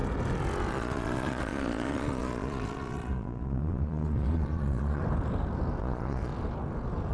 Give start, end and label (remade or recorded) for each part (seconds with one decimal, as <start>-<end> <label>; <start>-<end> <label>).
0.0-0.7 recorded; 0.7-5.0 remade; 5.0-5.8 recorded; 5.8-6.3 remade; 6.3-7.1 recorded